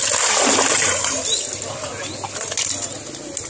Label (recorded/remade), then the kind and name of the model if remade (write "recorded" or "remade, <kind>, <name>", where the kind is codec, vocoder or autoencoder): recorded